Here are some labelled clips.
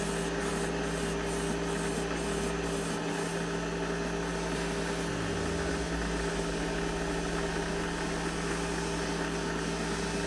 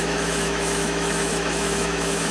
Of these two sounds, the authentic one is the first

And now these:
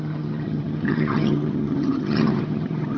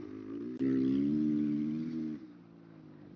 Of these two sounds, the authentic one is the second